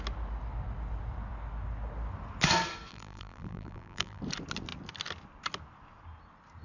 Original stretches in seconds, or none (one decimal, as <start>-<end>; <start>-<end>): 0.0-2.9; 4.2-6.6